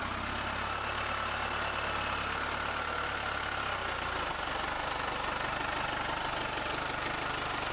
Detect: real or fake real